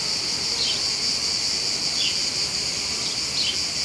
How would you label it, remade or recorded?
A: recorded